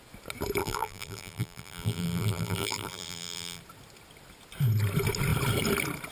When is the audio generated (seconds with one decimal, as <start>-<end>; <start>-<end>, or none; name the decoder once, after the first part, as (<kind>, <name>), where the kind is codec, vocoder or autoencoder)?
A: 0.6-3.6 (vocoder, BigVGAN v2)